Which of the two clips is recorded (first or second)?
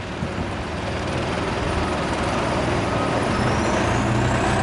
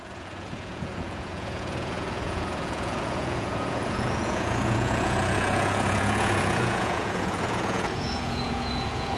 first